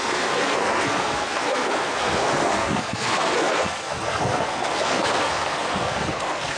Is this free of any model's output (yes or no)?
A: no